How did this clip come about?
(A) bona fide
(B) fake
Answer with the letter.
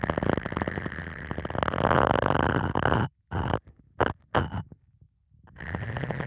A